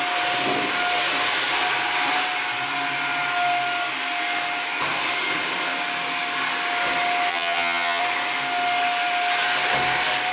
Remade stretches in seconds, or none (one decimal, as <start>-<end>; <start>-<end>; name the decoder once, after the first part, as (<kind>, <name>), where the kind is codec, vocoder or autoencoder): 7.3-8.0 (vocoder, HiFi-GAN)